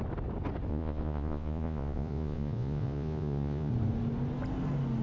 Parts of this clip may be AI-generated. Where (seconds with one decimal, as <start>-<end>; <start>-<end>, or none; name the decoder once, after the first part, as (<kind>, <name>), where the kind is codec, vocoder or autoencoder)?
0.7-3.7 (vocoder, Vocos)